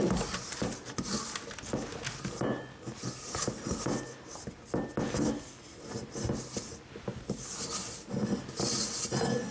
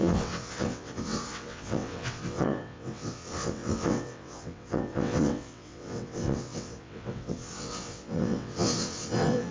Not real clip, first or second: second